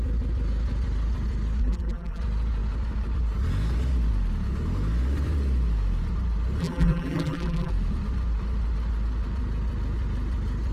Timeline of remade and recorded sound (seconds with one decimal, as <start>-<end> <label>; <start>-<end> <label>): 0.0-1.6 recorded; 1.6-2.2 remade; 2.2-6.6 recorded; 6.6-7.7 remade; 7.7-10.7 recorded